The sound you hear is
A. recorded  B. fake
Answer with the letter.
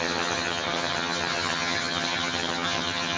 B